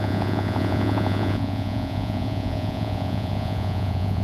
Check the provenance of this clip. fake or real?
fake